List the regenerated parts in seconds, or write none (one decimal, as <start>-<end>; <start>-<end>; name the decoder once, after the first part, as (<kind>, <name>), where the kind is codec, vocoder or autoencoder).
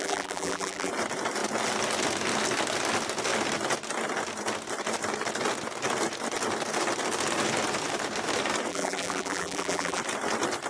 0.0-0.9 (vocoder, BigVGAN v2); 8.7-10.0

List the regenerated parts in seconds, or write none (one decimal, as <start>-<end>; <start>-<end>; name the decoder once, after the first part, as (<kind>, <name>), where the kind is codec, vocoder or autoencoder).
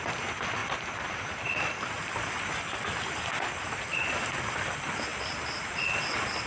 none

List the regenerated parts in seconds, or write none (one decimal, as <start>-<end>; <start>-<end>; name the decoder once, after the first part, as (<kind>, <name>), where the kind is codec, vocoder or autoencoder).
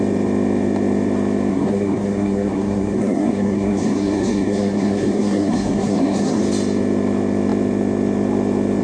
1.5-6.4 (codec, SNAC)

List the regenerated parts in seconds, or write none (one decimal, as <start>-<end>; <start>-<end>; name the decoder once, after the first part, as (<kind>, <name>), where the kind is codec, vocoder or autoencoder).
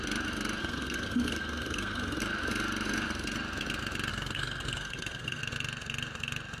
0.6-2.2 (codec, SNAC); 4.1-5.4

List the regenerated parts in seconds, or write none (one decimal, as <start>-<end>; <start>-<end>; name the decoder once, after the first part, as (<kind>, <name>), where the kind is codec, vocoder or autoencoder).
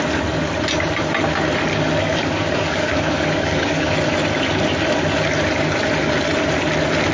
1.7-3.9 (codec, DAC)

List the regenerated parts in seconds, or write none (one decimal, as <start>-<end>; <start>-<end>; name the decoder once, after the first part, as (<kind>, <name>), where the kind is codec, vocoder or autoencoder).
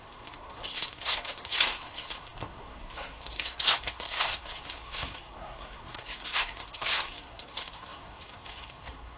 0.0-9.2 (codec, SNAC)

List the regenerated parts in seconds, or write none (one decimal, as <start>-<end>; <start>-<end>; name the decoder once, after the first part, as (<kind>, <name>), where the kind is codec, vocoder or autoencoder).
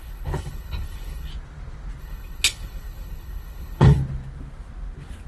0.0-1.3 (codec, HILCodec); 2.0-4.0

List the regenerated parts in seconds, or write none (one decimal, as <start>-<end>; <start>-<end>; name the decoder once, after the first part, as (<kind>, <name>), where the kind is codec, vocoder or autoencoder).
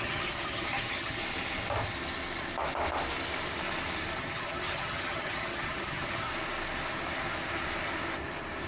0.0-1.2 (vocoder, HiFi-GAN); 4.2-6.3